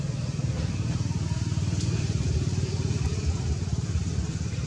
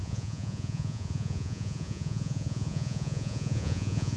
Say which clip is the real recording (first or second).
first